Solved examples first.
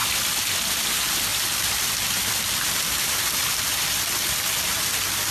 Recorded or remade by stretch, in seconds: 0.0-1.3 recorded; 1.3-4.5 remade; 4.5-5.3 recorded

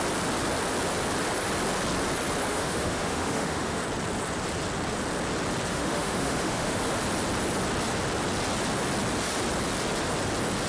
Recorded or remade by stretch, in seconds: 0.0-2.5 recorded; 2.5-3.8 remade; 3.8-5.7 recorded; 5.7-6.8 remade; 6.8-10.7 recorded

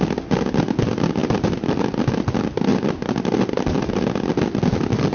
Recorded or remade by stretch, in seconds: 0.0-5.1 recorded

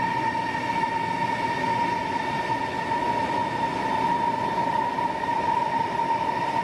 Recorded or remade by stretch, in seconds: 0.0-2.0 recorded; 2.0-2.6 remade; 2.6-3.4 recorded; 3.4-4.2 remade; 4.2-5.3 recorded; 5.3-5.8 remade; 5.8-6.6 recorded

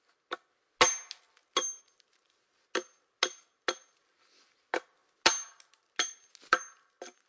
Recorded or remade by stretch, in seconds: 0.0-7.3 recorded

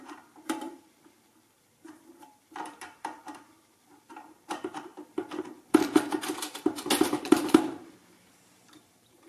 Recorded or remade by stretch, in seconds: 0.0-9.3 remade

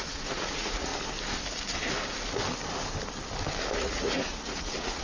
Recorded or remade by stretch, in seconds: 0.0-0.9 remade; 0.9-3.8 recorded; 3.8-5.0 remade